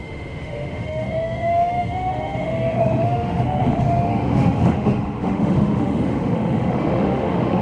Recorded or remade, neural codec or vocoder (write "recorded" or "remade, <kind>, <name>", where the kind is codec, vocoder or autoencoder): remade, autoencoder, DAC-VAE